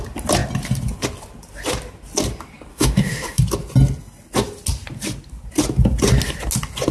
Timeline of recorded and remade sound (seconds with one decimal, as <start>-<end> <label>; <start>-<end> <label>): 0.0-2.7 recorded; 2.7-3.4 remade; 3.4-6.9 recorded